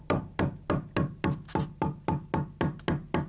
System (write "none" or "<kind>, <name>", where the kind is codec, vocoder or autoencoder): none